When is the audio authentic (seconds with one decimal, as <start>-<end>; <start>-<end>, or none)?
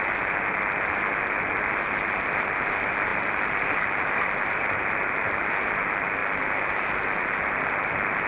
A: 0.0-8.3